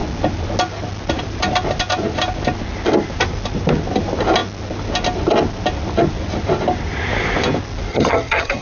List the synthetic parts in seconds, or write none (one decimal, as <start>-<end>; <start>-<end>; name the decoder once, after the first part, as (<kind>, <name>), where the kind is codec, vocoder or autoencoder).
7.9-8.6 (vocoder, HiFi-GAN)